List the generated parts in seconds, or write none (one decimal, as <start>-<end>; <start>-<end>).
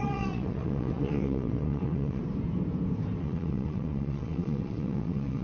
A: 0.0-2.2; 3.2-5.4